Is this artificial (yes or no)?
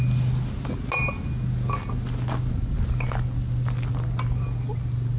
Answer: no